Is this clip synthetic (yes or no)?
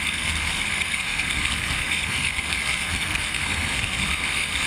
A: yes